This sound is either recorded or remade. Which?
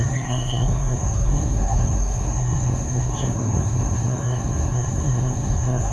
remade